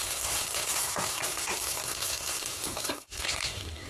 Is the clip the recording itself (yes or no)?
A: no